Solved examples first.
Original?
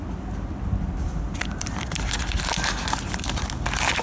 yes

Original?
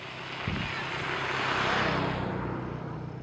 yes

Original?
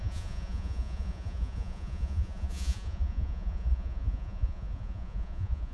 no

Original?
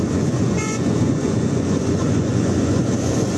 no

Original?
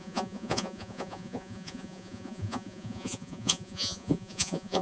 no